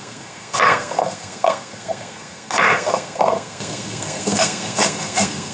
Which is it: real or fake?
fake